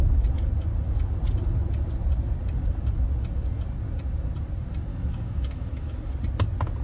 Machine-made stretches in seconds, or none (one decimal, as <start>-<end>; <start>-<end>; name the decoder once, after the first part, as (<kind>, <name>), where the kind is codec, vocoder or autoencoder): 4.9-6.1 (autoencoder, DAC-VAE)